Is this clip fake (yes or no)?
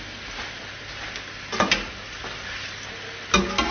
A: no